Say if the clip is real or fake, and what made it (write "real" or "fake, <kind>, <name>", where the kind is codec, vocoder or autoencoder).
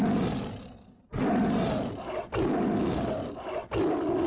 real